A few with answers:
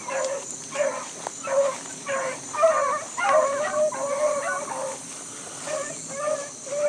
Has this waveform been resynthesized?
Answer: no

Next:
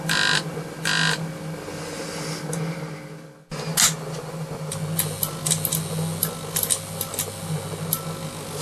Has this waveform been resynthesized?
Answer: no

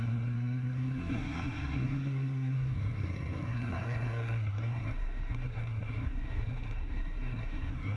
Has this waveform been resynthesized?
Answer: yes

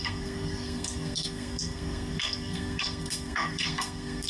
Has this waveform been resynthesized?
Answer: yes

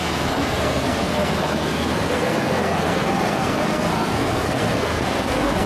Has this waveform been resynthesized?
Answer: yes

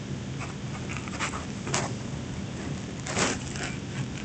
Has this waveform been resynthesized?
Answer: no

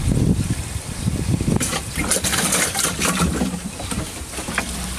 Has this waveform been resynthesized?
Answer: no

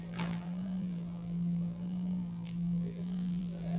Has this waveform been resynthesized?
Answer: yes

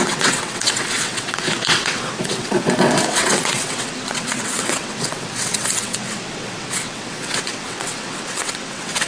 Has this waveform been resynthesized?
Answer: yes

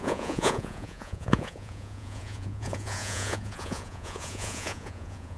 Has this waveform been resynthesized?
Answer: yes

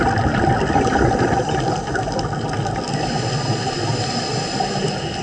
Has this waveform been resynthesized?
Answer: no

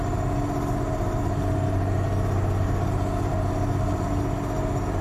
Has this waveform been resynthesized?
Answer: no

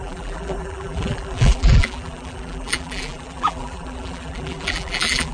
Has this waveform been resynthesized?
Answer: yes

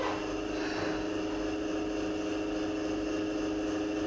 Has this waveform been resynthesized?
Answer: no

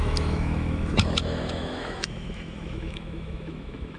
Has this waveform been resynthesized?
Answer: yes